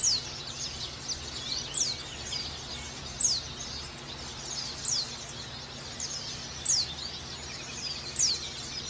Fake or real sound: real